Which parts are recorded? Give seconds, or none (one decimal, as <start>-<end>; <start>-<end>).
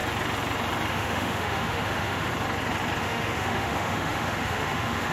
0.0-0.9; 2.3-3.0